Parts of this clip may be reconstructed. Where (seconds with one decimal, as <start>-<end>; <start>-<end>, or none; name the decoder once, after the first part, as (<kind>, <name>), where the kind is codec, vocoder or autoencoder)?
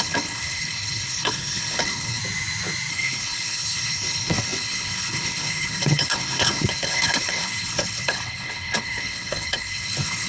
0.0-2.2 (codec, HILCodec); 2.9-10.3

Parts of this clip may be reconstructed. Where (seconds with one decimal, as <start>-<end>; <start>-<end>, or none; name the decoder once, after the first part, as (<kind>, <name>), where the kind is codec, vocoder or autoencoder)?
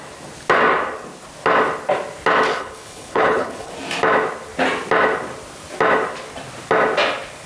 2.5-3.7 (codec, HILCodec)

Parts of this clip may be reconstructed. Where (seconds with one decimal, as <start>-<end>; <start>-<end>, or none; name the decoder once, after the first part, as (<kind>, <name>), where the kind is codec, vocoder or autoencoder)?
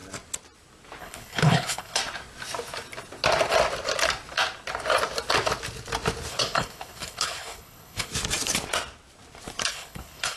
1.0-2.0 (codec, HILCodec); 6.3-8.1; 9.7-10.4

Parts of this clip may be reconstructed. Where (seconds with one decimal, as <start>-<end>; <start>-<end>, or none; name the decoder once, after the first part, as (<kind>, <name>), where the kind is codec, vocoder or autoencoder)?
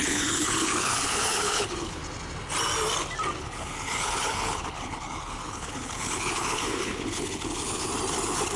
0.0-2.0 (codec, HILCodec); 3.4-7.9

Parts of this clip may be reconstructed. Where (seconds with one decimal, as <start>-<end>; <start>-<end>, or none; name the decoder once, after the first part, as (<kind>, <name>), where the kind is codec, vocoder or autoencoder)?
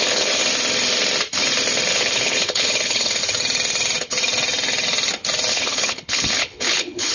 0.0-0.4 (codec, HILCodec); 1.9-3.2; 5.5-7.1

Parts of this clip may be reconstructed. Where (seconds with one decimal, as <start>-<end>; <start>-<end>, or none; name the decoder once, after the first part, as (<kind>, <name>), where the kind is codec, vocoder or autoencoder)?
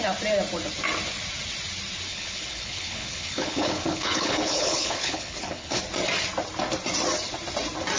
2.1-5.8 (codec, HILCodec)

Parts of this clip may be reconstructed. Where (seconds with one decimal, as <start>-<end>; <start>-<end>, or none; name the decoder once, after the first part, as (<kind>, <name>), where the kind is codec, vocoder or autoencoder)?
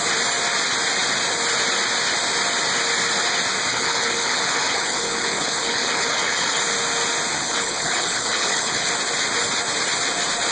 3.7-6.6 (codec, HILCodec); 7.3-8.9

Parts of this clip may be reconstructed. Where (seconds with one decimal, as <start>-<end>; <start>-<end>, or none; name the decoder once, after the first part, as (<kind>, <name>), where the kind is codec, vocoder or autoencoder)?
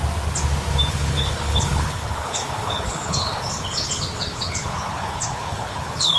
0.9-6.2 (codec, HILCodec)